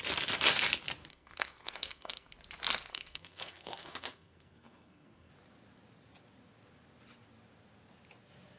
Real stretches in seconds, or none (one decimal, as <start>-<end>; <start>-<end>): 0.0-1.1; 2.3-2.9; 5.3-8.6

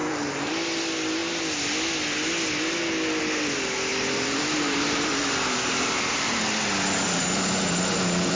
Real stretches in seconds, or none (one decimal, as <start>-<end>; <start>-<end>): 0.5-3.9

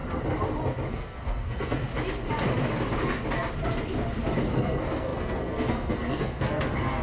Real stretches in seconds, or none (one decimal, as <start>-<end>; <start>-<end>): 0.0-0.9; 1.9-4.5